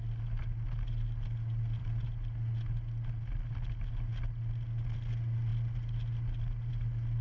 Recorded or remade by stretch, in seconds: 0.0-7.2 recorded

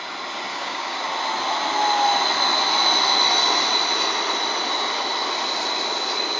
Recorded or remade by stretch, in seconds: 0.0-0.5 recorded; 0.5-1.0 remade; 1.0-6.4 recorded

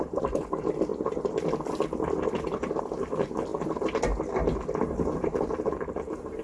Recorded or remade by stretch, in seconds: 0.0-0.9 remade; 0.9-2.8 recorded; 2.8-3.5 remade; 3.5-4.7 recorded; 4.7-6.4 remade

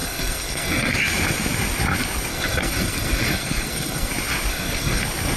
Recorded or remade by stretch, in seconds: 0.0-0.9 remade; 0.9-2.3 recorded; 2.3-4.1 remade; 4.1-4.5 recorded; 4.5-5.0 remade; 5.0-5.4 recorded

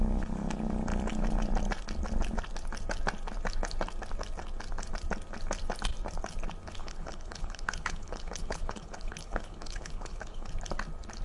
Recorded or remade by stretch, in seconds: 0.0-6.8 recorded; 6.8-10.5 remade; 10.5-11.2 recorded

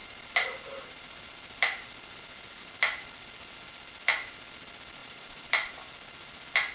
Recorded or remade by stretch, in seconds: 0.0-5.0 recorded; 5.0-5.7 remade; 5.7-6.7 recorded

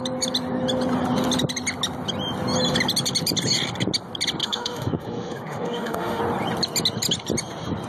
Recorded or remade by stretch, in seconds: 0.0-4.4 recorded; 4.4-6.2 remade; 6.2-7.9 recorded